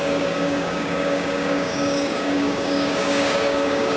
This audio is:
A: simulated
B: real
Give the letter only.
A